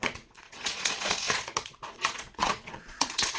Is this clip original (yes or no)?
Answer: no